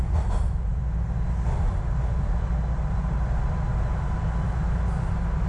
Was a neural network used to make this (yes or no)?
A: no